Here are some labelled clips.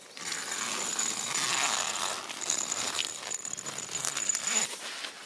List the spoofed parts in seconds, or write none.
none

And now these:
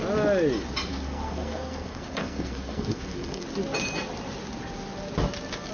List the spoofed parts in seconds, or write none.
0.9-3.4

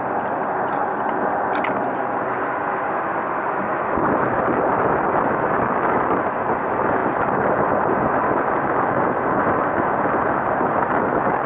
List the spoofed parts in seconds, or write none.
none

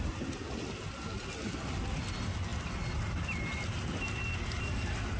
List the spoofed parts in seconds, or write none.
none